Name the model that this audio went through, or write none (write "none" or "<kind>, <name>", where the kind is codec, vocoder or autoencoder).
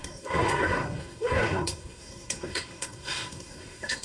codec, SNAC